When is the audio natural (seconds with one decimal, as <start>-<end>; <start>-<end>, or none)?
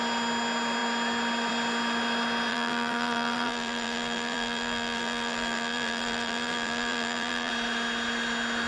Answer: 0.0-2.5; 7.5-8.7